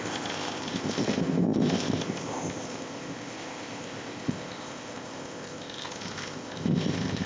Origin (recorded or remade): remade